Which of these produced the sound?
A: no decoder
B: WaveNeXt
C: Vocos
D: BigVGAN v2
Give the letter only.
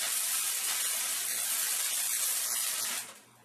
A